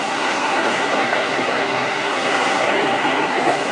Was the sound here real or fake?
fake